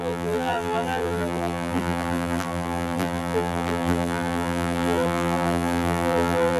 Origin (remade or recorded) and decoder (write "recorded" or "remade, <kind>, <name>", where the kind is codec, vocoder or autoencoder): remade, vocoder, BigVGAN v2